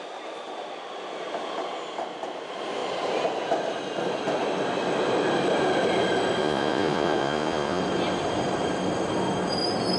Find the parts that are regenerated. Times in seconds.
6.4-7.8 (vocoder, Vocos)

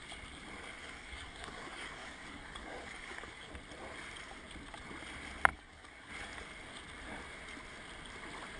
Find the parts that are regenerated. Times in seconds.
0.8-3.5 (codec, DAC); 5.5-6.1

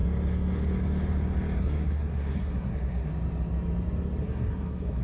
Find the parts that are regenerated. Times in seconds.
1.6-3.1 (codec, SNAC); 4.2-5.0